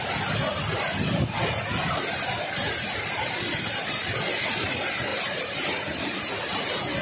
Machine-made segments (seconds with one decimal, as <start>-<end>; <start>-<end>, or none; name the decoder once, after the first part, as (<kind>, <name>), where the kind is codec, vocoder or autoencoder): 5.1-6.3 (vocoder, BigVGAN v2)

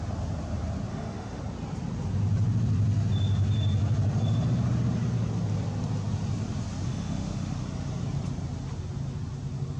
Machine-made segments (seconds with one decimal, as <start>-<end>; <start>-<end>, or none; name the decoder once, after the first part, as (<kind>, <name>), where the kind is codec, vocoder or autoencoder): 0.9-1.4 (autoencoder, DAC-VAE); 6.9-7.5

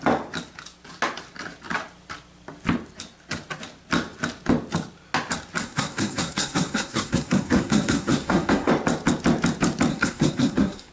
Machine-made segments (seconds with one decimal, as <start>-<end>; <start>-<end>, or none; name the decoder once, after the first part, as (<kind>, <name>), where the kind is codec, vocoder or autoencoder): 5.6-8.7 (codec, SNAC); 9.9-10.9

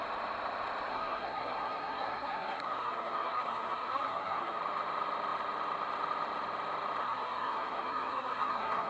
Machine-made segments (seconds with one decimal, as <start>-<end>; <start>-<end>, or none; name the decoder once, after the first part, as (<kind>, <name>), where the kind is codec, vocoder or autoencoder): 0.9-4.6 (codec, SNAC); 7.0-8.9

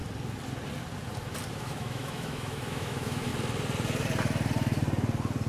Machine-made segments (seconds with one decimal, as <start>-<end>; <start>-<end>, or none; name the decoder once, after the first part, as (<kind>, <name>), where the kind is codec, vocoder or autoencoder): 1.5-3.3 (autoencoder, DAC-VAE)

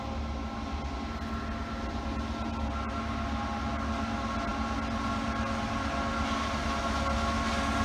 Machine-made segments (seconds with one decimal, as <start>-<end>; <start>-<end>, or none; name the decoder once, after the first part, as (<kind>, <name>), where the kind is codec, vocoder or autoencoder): none

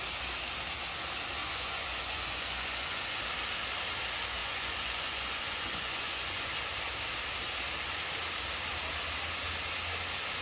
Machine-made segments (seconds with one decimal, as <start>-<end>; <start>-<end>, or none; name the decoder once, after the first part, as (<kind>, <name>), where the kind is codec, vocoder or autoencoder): 1.4-3.2 (vocoder, Vocos); 4.4-6.5